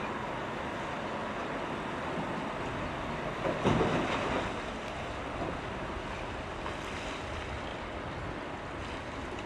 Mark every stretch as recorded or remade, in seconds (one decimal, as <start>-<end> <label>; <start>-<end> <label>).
0.0-9.5 recorded